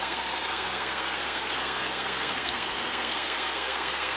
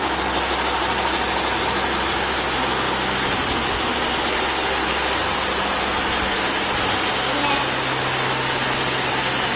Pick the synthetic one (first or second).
first